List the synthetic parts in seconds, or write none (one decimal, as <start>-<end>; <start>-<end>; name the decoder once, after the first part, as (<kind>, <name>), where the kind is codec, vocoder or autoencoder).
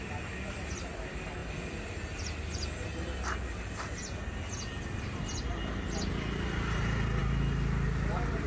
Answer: none